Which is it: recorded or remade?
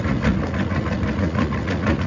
remade